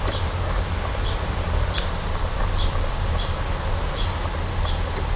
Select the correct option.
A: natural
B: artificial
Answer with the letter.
A